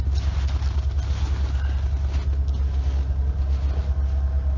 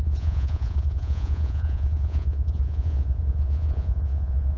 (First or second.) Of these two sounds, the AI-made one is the second